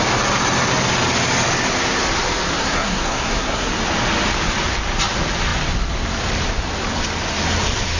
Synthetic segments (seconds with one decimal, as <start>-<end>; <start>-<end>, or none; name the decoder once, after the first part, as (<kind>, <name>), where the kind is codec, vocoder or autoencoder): 2.6-3.7 (codec, SNAC)